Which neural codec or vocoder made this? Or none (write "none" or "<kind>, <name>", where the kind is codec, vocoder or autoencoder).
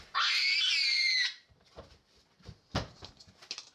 none